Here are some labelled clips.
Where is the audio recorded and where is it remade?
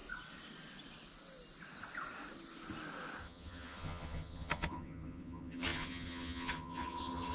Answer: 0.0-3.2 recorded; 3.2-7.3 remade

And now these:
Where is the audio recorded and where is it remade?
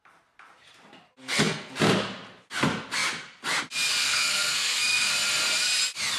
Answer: 0.0-1.2 recorded; 1.2-1.7 remade; 1.7-4.0 recorded; 4.0-5.1 remade; 5.1-6.2 recorded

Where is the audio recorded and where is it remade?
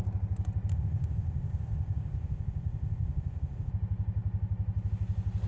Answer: 0.0-0.7 recorded; 0.7-3.7 remade; 3.7-5.5 recorded